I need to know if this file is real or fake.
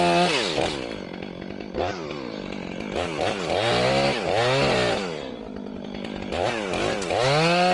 real